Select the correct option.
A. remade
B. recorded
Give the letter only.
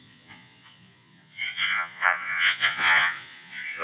A